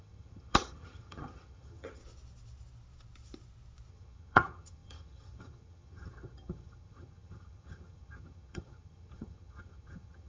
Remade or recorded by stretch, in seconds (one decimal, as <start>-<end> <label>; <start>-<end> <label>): 0.0-2.0 remade; 2.0-3.9 recorded; 3.9-10.3 remade